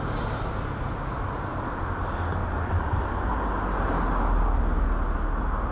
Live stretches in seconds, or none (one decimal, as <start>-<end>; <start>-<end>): 0.0-5.7